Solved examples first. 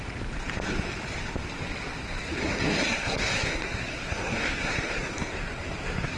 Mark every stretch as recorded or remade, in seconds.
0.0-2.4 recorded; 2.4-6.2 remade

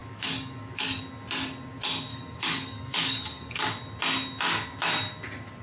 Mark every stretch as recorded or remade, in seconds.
0.0-1.0 remade; 1.0-2.1 recorded; 2.1-3.6 remade; 3.6-5.6 recorded

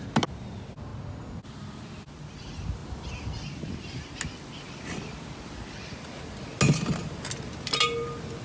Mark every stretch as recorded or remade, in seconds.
0.0-8.4 recorded

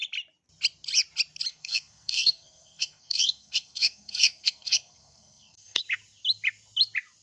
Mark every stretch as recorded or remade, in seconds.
0.0-1.5 recorded; 1.5-5.8 remade; 5.8-7.2 recorded

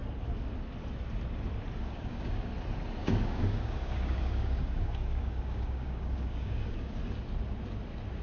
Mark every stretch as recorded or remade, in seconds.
0.0-1.8 recorded; 1.8-2.5 remade; 2.5-3.0 recorded; 3.0-7.0 remade; 7.0-8.2 recorded